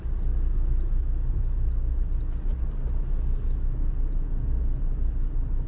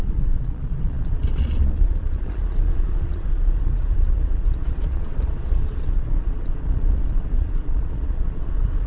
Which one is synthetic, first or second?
second